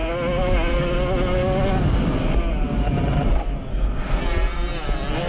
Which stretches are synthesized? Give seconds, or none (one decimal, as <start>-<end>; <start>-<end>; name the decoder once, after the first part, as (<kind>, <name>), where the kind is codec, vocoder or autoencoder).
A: 3.7-4.2 (codec, SNAC)